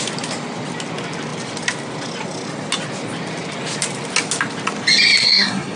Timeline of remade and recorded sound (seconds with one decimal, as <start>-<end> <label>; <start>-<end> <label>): 0.0-5.2 recorded; 5.2-5.8 remade